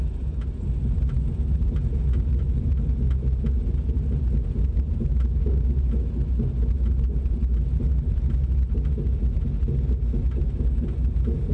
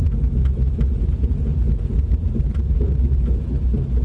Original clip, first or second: first